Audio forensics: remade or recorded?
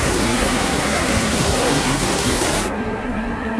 remade